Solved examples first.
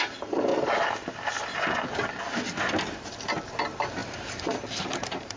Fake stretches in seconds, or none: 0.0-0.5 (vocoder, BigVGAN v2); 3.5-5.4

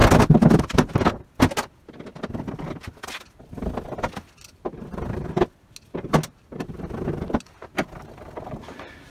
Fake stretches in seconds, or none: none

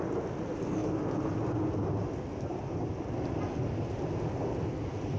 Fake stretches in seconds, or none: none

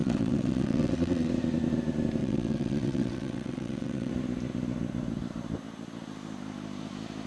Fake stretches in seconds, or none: 0.0-1.3 (vocoder, WaveNeXt); 2.2-4.1

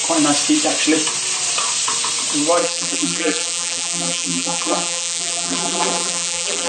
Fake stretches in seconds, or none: 2.6-6.7 (vocoder, BigVGAN v2)